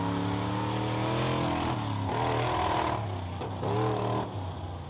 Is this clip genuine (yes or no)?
yes